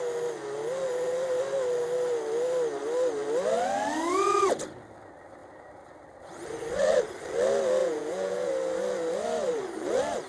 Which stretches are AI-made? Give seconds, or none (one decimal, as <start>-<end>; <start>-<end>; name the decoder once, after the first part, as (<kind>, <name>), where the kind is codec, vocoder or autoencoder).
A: 7.8-8.5 (vocoder, Vocos)